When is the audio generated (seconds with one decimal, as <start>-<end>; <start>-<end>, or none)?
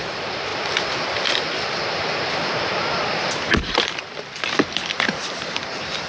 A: 0.0-6.1